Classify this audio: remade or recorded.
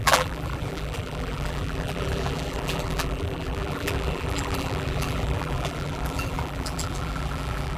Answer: remade